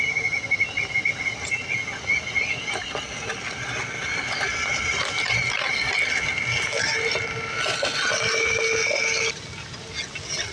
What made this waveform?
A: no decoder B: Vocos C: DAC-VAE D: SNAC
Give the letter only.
A